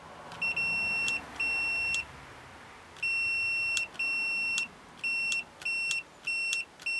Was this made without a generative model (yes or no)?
yes